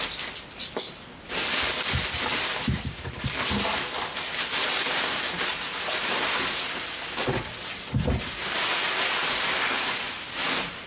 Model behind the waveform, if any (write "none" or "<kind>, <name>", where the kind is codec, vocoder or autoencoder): none